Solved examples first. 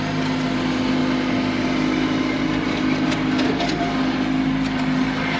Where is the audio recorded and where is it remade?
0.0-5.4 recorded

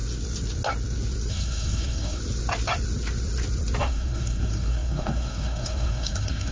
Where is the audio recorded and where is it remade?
0.0-1.3 recorded; 1.3-2.2 remade; 2.2-3.8 recorded; 3.8-6.5 remade

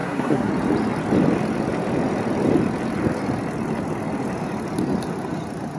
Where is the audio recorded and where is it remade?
0.0-0.5 remade; 0.5-5.8 recorded

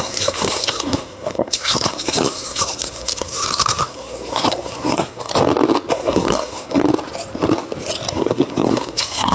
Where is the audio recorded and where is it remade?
0.0-5.3 remade; 5.3-5.9 recorded; 5.9-6.8 remade; 6.8-8.1 recorded; 8.1-9.3 remade

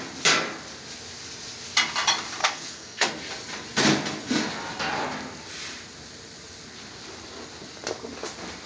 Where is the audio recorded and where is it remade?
0.0-2.4 recorded; 2.4-3.1 remade; 3.1-8.7 recorded

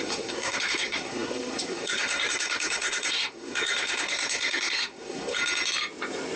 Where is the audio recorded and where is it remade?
0.0-5.4 remade; 5.4-6.4 recorded

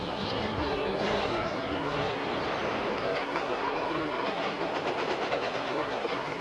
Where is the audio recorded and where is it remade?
0.0-2.3 remade; 2.3-2.9 recorded; 2.9-4.7 remade; 4.7-5.3 recorded; 5.3-6.4 remade